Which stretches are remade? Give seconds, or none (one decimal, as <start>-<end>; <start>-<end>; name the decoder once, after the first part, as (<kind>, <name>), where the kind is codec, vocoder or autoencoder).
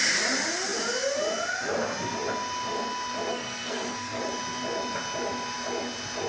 3.3-4.2 (codec, SNAC)